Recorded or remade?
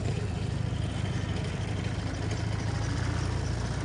recorded